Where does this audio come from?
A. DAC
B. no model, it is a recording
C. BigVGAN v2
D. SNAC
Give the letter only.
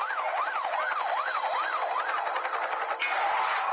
B